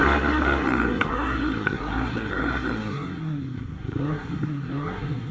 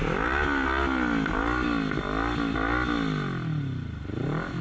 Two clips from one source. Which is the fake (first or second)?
first